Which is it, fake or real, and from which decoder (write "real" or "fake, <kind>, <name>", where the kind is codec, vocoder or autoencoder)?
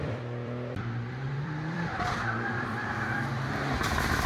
fake, vocoder, BigVGAN v2